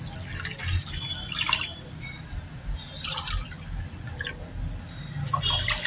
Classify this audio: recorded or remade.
recorded